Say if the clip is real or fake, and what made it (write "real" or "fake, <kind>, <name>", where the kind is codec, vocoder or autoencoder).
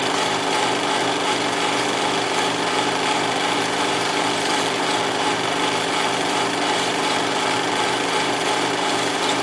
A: fake, vocoder, BigVGAN v2